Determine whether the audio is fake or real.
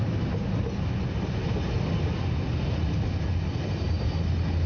real